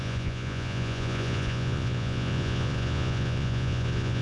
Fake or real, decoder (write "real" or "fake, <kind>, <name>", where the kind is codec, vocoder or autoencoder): fake, vocoder, Vocos